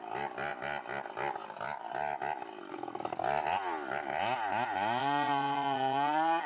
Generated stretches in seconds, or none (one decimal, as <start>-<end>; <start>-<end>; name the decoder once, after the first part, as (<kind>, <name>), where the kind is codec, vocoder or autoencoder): 5.0-6.5 (vocoder, Vocos)